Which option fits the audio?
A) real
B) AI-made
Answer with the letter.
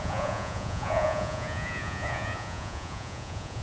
B